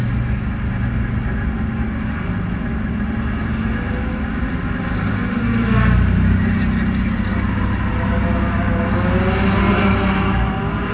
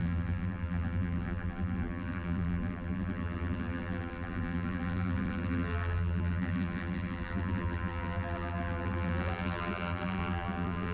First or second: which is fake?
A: second